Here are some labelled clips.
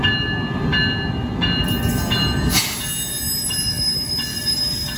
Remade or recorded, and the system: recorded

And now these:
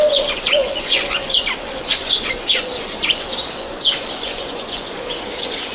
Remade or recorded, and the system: remade, vocoder, Vocos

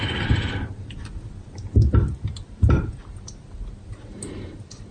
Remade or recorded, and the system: recorded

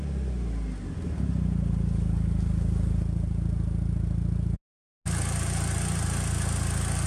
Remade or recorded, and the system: recorded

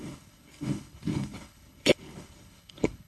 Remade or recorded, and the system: remade, codec, HILCodec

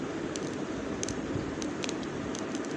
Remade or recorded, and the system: recorded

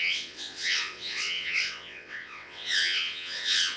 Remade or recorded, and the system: remade, vocoder, WaveNeXt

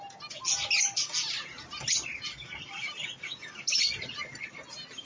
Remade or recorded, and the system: recorded